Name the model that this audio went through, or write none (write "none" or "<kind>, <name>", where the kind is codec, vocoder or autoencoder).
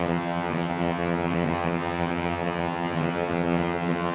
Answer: vocoder, HiFi-GAN